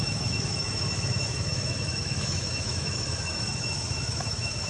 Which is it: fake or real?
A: fake